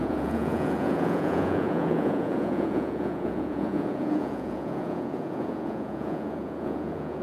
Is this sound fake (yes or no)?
yes